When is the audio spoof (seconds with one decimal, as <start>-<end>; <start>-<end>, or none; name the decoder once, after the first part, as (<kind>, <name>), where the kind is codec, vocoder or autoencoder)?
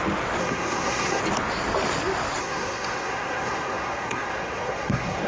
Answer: 0.4-1.2 (codec, SNAC); 2.4-5.3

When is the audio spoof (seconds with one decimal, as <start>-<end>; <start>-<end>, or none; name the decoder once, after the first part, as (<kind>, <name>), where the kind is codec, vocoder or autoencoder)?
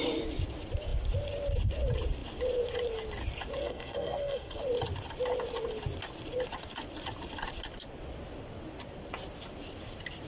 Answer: 3.6-4.6 (codec, SNAC)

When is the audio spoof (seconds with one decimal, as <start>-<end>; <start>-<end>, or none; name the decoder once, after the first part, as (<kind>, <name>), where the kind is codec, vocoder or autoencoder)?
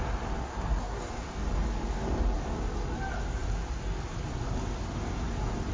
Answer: 0.4-1.0 (codec, SNAC)